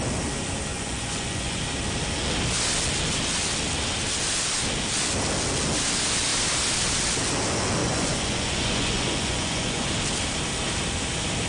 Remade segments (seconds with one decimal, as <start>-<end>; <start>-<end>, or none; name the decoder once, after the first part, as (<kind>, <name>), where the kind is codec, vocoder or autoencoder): 0.7-1.6 (vocoder, Vocos); 7.8-9.9